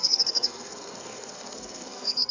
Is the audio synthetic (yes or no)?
yes